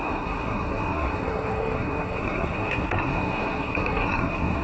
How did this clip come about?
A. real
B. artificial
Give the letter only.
B